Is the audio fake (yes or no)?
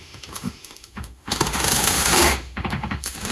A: yes